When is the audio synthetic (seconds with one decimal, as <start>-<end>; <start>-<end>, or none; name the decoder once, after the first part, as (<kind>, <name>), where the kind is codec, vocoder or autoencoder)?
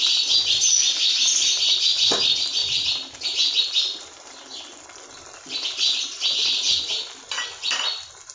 none